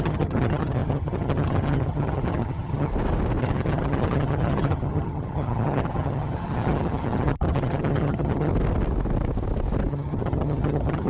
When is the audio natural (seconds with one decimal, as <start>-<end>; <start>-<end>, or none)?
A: 2.9-3.4; 8.5-9.9